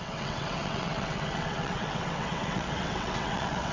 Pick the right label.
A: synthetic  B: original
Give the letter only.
A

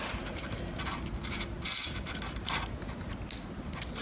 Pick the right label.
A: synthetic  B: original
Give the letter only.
B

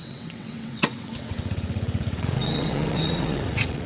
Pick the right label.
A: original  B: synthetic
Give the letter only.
B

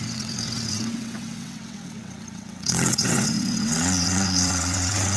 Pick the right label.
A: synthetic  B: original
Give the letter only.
A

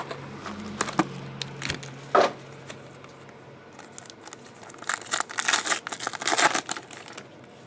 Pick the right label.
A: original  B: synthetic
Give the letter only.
A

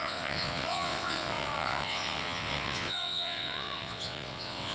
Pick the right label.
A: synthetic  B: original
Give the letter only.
A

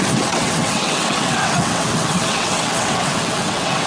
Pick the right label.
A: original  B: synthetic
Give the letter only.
B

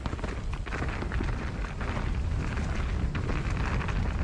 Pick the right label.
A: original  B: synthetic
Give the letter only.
A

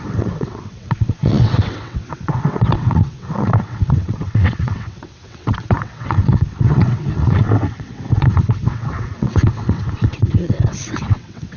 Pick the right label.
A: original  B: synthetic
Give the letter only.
B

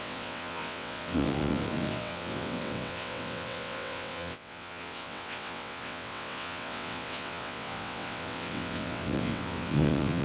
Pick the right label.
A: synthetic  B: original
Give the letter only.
A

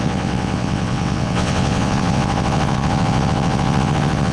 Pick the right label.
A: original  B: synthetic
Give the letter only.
B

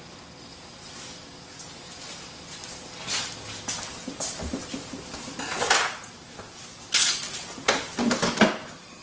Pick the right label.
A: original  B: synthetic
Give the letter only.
A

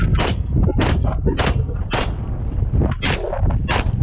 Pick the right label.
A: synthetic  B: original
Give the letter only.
B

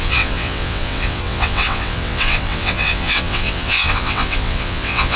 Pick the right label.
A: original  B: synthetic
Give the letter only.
B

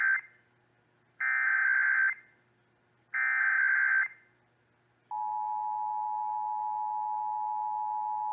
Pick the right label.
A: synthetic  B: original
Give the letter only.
B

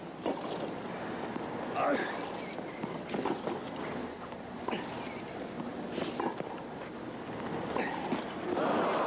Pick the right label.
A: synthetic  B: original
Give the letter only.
B